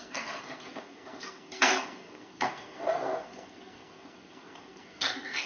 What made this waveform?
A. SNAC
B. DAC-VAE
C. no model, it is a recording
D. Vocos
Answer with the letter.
A